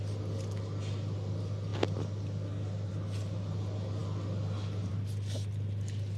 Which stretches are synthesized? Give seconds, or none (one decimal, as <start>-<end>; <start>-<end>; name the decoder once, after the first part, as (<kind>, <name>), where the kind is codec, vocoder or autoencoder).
none